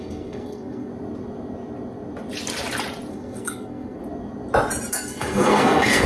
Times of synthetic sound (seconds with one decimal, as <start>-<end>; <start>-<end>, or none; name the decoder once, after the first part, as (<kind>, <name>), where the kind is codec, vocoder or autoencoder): 0.0-0.9 (codec, SNAC); 3.1-4.0; 4.9-6.1